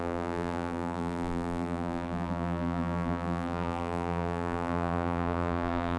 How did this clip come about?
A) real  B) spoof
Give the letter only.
B